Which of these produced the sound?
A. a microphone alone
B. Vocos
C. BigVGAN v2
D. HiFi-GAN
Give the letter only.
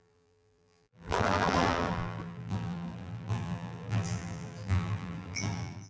C